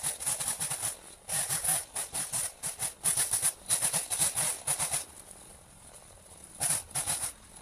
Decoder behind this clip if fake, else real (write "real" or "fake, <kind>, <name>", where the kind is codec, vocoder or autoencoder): real